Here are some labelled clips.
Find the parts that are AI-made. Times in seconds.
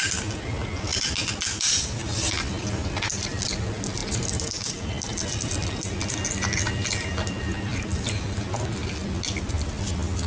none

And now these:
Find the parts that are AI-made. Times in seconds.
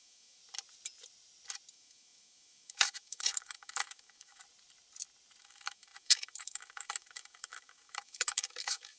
0.0-0.4 (autoencoder, DAC-VAE); 1.7-4.4; 5.4-9.0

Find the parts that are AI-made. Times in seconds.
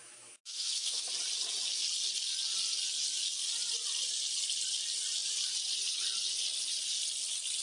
0.0-1.1 (autoencoder, DAC-VAE)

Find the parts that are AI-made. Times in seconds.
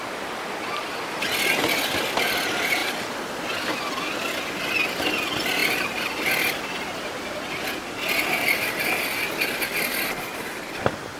none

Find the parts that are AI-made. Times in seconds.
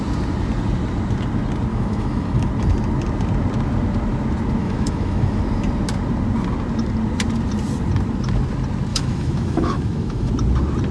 1.7-2.5 (autoencoder, DAC-VAE); 4.6-5.4; 8.9-10.3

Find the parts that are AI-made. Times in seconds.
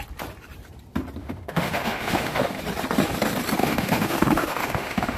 1.2-2.6 (autoencoder, DAC-VAE); 3.6-5.2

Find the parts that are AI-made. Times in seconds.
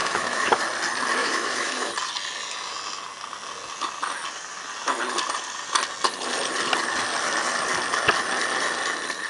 0.0-0.6 (autoencoder, DAC-VAE); 1.2-1.9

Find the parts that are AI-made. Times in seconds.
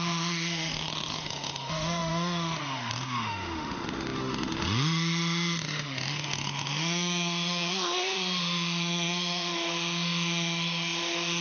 0.0-11.4 (autoencoder, DAC-VAE)